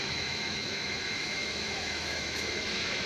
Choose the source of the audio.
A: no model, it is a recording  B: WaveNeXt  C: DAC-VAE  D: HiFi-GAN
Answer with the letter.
C